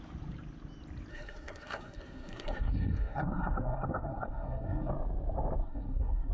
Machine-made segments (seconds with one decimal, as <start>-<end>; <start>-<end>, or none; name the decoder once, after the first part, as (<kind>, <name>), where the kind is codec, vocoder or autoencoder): 1.1-4.9 (codec, SNAC); 5.6-6.3

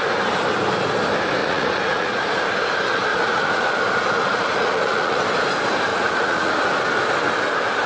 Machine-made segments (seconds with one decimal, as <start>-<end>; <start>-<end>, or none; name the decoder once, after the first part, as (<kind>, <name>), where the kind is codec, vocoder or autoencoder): 1.4-2.2 (vocoder, Vocos); 3.1-3.7; 4.2-5.2; 5.9-6.5

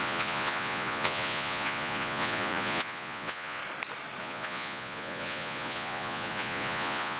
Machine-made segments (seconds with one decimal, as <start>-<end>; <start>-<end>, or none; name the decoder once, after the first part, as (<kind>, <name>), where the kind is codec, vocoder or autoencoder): 0.0-3.6 (vocoder, Vocos); 4.2-7.2

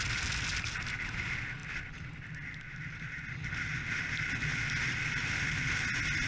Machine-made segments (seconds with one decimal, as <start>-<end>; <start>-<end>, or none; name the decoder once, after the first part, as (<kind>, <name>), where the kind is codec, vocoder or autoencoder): none

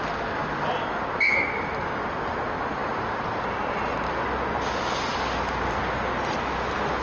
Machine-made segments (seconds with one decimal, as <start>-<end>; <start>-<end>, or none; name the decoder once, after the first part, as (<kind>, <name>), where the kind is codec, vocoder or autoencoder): none